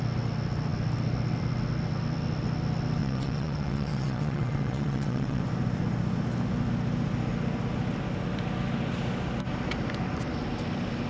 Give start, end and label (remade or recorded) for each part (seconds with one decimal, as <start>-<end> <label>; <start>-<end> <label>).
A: 0.0-3.0 recorded; 3.0-5.4 remade; 5.4-11.1 recorded